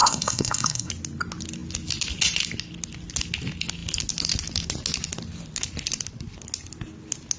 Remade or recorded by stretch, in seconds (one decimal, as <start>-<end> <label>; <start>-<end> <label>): 0.0-0.9 remade; 0.9-7.4 recorded